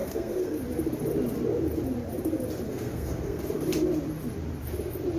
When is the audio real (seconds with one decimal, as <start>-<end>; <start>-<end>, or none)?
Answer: 0.6-2.7; 3.4-5.2

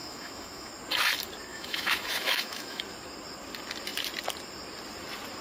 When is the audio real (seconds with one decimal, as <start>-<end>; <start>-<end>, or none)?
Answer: 0.7-1.5; 2.8-5.4

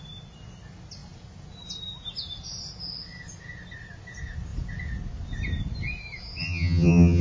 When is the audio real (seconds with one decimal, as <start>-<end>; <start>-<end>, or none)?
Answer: 0.0-6.4

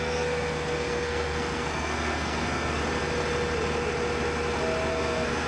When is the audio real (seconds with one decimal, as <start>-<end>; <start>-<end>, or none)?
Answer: 2.8-4.9

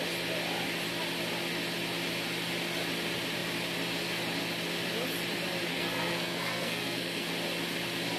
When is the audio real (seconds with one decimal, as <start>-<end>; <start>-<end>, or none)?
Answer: 0.0-5.7; 7.3-8.2